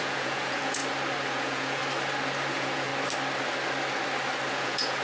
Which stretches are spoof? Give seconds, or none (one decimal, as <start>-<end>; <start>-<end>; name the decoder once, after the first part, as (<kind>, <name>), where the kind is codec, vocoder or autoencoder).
0.0-0.8 (vocoder, Vocos); 1.3-1.8; 2.5-2.9; 4.5-5.0